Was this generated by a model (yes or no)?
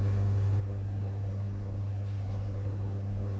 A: yes